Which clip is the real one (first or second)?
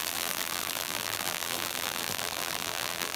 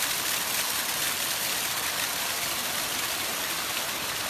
second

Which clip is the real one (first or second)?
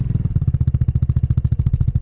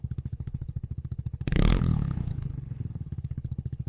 first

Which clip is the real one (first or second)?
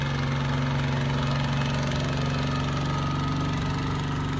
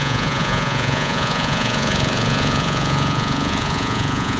first